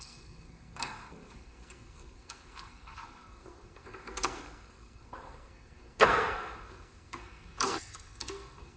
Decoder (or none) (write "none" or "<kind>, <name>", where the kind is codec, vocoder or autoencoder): codec, SNAC